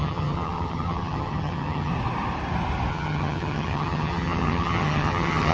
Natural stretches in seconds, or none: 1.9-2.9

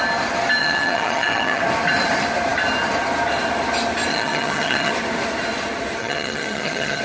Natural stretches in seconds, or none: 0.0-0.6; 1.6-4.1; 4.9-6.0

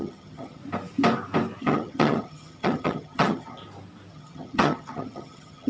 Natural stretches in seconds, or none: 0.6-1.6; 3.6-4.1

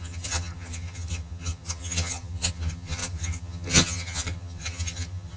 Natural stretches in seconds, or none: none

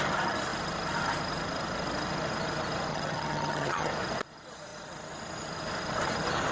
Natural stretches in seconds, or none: 0.0-2.9; 3.9-6.5

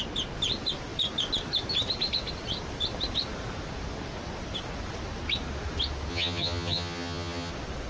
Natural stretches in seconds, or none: 0.0-6.1; 7.5-7.9

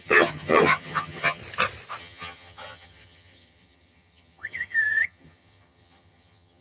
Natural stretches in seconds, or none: 1.4-2.0